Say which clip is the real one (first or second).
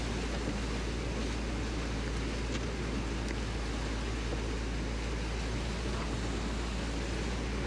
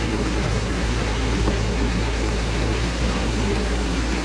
first